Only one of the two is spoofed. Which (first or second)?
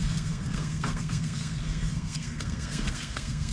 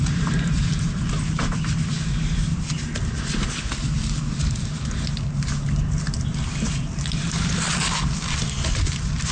first